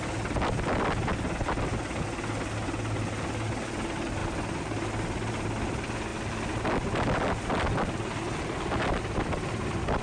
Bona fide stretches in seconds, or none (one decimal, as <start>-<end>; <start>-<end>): 0.0-10.0